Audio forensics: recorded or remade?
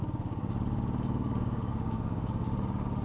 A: remade